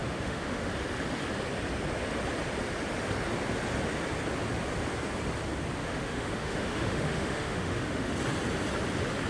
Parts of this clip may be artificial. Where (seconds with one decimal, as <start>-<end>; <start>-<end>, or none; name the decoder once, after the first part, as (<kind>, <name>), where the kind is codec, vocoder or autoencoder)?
0.0-0.7 (autoencoder, DAC-VAE); 5.8-8.1